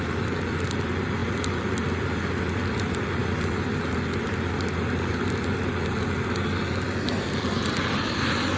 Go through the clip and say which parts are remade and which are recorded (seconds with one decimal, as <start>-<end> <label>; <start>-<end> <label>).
0.0-8.6 recorded

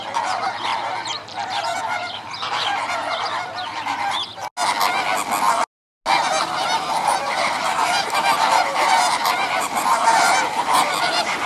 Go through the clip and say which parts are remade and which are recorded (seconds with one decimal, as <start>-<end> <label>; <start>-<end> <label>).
0.0-4.3 remade; 4.3-6.1 recorded; 6.1-11.5 remade

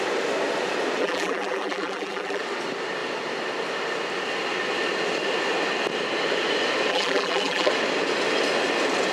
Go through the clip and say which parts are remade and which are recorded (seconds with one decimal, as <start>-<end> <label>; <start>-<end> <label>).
0.0-1.0 recorded; 1.0-2.4 remade; 2.4-6.9 recorded; 6.9-7.7 remade; 7.7-9.1 recorded